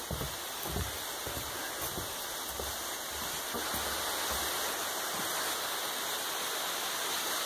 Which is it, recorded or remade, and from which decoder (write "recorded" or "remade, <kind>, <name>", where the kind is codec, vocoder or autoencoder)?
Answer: recorded